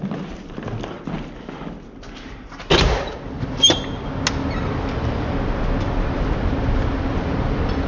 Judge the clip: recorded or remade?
recorded